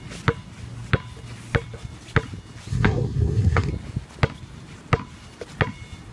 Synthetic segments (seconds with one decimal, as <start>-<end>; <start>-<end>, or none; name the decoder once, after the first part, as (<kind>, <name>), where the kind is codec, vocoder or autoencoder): 2.7-3.7 (codec, SNAC)